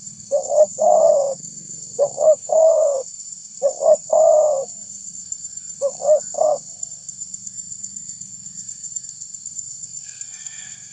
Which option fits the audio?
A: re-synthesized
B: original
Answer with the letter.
A